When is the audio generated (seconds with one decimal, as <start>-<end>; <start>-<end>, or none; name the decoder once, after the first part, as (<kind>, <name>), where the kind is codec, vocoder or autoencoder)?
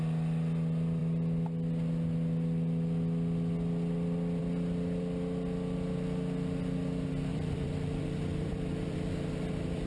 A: 7.3-9.3 (vocoder, BigVGAN v2)